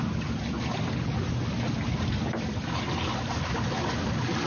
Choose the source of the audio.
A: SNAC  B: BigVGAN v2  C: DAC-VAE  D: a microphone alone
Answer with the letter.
D